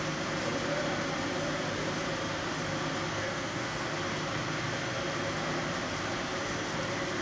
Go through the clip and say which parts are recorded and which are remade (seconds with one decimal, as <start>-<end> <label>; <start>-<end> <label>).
0.0-3.1 recorded; 3.1-3.9 remade; 3.9-7.2 recorded